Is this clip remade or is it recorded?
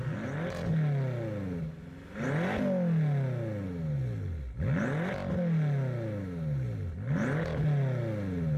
recorded